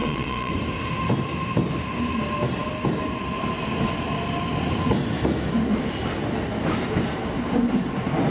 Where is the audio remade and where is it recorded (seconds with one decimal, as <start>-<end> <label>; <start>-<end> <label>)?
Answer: 0.0-0.5 remade; 0.5-8.3 recorded